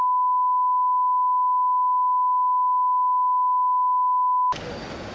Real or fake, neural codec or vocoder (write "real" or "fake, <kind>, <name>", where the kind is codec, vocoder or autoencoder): real